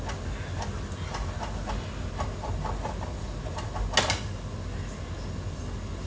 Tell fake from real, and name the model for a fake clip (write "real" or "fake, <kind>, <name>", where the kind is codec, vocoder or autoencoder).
real